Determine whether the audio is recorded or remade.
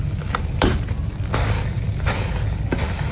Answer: recorded